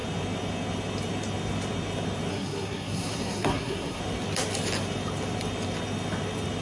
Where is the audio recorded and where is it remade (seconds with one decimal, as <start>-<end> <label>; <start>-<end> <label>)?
0.0-2.3 recorded; 2.3-4.0 remade; 4.0-6.6 recorded